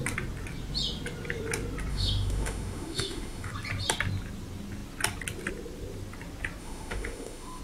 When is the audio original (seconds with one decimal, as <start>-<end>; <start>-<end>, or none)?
0.0-1.9; 3.5-6.6